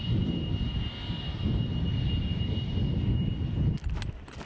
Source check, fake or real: real